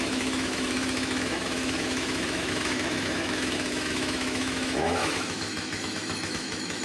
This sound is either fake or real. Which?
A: fake